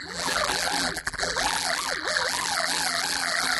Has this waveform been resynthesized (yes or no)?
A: yes